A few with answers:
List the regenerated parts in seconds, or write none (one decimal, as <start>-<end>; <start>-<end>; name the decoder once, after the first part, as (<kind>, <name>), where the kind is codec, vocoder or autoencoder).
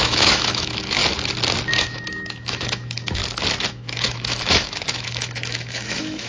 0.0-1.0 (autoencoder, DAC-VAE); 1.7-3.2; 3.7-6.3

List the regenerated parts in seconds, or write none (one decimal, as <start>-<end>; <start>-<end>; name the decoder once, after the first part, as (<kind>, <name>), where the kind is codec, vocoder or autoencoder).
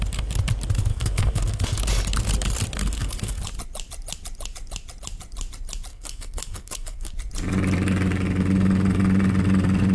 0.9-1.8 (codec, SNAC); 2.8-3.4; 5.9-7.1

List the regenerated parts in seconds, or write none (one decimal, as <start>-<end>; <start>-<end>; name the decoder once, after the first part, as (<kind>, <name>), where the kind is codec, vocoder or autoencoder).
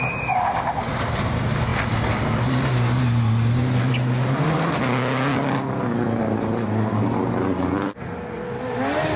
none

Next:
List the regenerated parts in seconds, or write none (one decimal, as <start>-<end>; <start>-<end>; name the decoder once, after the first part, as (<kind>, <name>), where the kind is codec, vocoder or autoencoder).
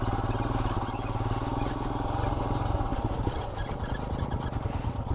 none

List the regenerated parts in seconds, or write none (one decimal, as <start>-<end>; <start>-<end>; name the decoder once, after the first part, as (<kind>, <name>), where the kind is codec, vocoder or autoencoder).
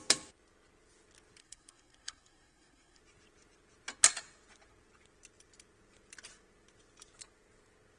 1.4-3.0 (codec, SNAC)